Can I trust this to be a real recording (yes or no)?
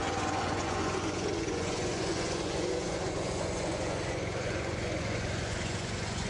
no